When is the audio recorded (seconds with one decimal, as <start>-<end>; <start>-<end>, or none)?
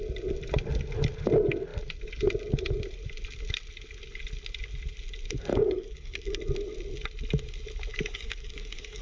0.0-5.5; 6.4-7.9